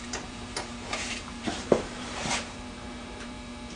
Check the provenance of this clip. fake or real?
fake